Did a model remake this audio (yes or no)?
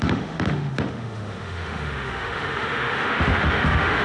yes